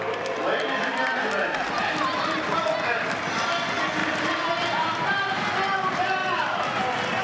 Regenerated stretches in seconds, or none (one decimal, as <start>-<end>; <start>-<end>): 1.8-2.6; 4.0-5.2; 6.2-7.2